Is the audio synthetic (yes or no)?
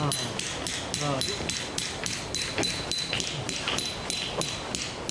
no